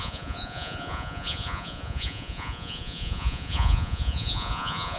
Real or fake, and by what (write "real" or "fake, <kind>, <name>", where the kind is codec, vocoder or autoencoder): fake, vocoder, Vocos